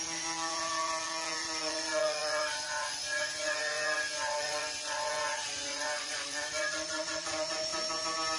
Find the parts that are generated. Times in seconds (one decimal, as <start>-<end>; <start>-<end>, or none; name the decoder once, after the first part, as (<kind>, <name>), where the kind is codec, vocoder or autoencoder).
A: 0.0-7.7 (vocoder, Vocos)